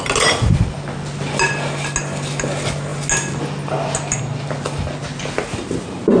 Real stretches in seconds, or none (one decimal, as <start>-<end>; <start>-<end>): 0.0-6.2